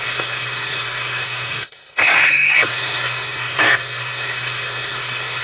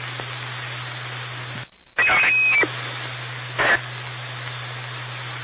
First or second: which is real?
second